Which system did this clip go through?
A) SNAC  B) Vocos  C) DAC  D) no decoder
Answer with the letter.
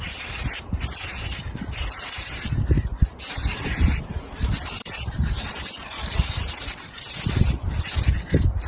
D